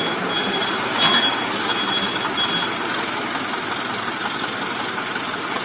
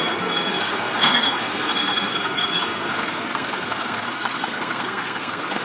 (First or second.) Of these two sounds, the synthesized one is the second